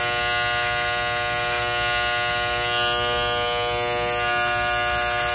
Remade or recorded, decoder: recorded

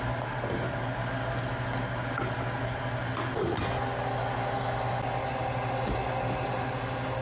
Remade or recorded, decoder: recorded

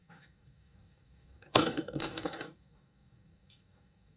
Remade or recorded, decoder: remade, codec, DAC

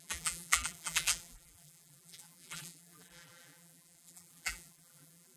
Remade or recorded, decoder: remade, vocoder, BigVGAN v2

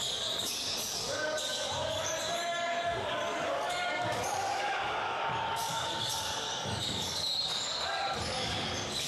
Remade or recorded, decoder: remade, codec, DAC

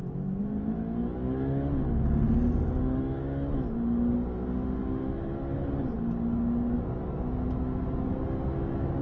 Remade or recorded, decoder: recorded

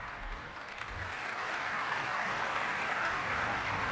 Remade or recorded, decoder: remade, codec, DAC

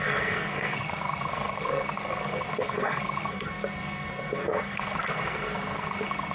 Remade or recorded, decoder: remade, codec, SNAC